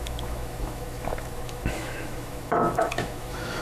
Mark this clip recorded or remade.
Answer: remade